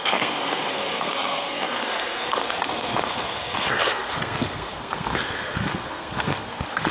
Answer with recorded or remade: remade